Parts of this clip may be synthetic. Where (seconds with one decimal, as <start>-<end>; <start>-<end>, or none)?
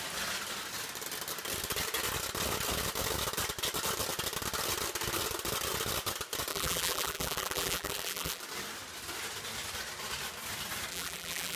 6.5-8.4; 10.9-11.6